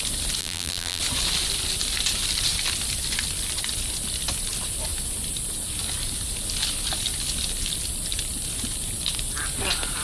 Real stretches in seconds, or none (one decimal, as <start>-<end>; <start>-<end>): 0.0-0.4; 1.0-10.0